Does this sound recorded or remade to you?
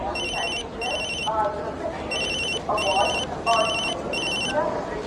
remade